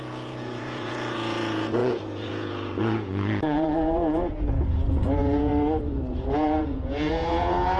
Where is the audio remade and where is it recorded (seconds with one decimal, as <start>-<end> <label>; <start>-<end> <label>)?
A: 0.0-5.5 remade; 5.5-6.1 recorded; 6.1-7.8 remade